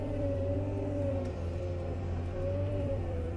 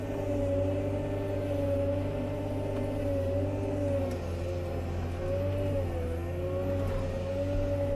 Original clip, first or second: second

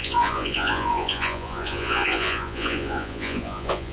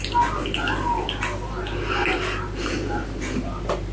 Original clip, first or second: second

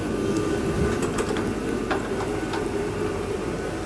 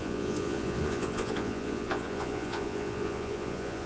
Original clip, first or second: first